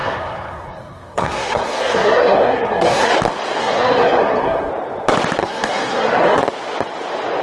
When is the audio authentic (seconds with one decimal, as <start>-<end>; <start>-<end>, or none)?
3.1-3.6; 4.7-5.4; 6.4-7.4